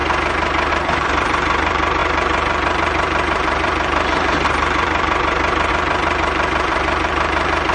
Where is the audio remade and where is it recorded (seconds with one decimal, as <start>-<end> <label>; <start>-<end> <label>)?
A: 0.0-0.7 recorded; 0.7-7.7 remade